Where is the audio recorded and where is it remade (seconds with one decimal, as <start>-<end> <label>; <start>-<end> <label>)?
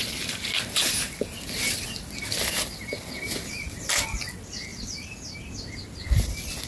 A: 0.0-4.7 recorded; 4.7-5.5 remade; 5.5-6.7 recorded